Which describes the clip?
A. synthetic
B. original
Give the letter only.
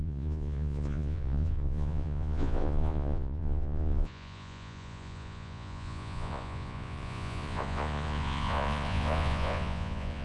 A